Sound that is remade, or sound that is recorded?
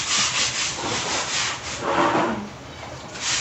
remade